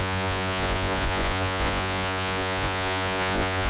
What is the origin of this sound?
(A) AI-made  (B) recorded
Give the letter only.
A